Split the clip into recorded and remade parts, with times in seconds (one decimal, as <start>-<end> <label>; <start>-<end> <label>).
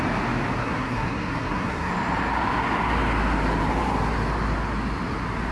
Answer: 0.0-0.6 recorded; 0.6-1.9 remade; 1.9-5.5 recorded